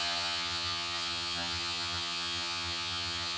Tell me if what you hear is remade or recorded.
remade